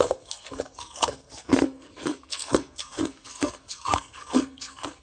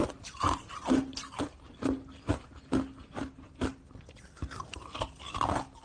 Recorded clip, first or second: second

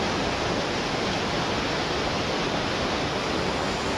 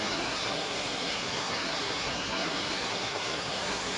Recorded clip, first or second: first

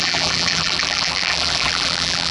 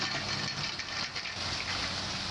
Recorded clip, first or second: second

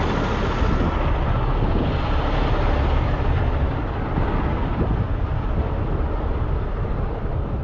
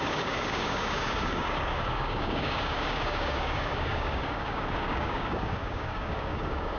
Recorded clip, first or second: first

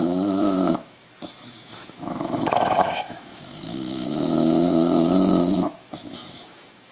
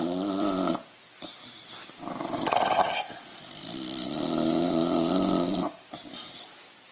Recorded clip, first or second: second